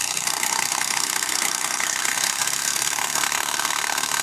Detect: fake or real fake